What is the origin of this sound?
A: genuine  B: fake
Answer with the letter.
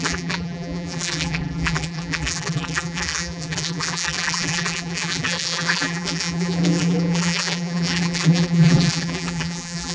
B